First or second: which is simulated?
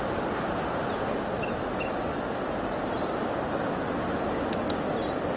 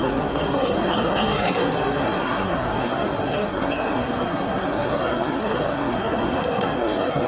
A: second